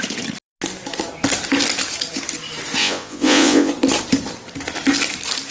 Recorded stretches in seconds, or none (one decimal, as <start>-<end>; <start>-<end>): 0.0-2.8; 3.7-5.5